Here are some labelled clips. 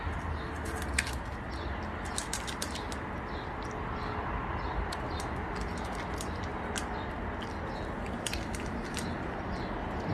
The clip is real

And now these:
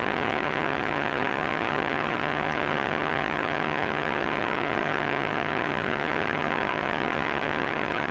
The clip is fake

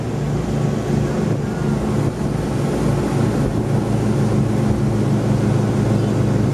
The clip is real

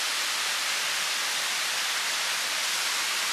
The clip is real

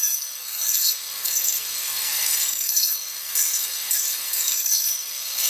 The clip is fake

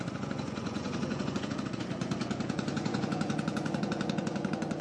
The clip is fake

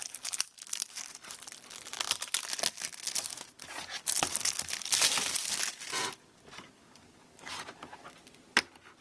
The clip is real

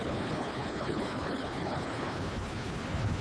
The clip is fake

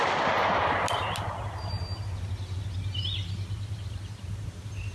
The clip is real